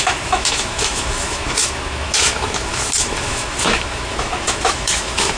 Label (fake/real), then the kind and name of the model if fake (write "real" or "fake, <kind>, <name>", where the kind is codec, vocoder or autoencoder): fake, autoencoder, DAC-VAE